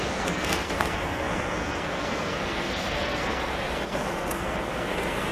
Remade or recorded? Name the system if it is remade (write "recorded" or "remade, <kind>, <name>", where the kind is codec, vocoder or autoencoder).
remade, codec, SNAC